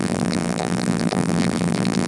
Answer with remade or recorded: remade